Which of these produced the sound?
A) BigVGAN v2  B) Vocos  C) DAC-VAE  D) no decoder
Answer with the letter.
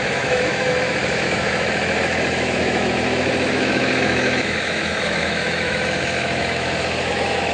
C